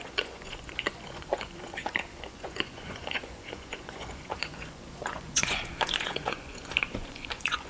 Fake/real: fake